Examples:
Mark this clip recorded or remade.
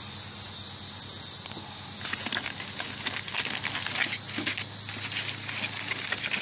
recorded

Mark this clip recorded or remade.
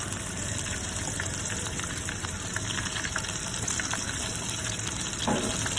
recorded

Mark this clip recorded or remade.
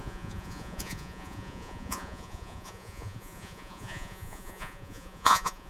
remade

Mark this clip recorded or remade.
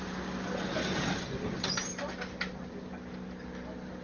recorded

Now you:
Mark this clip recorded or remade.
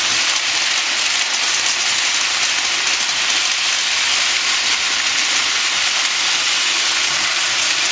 recorded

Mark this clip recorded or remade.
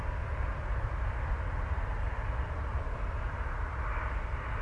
recorded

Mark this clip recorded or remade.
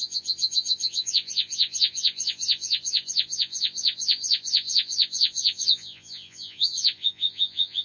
remade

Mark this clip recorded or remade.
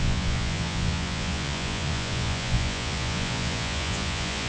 remade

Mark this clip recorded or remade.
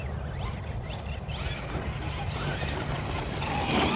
recorded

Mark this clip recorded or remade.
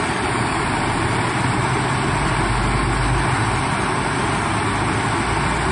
recorded